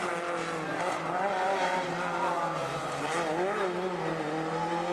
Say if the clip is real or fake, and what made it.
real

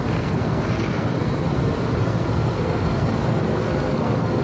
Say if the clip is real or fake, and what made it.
fake, codec, SNAC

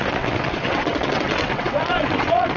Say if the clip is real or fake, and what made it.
fake, vocoder, WaveNeXt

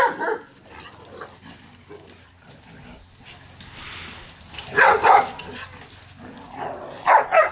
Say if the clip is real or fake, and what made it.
real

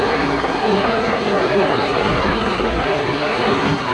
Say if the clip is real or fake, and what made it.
fake, codec, SNAC